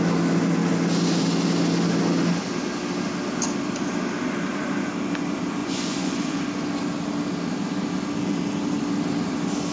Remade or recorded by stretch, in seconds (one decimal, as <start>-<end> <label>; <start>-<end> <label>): 0.0-5.6 recorded; 5.6-6.4 remade; 6.4-9.7 recorded